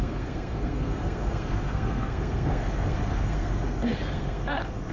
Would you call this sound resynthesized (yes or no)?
yes